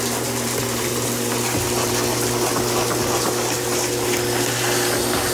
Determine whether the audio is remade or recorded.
recorded